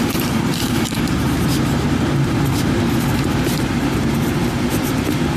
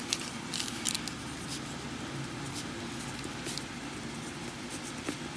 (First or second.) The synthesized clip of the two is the first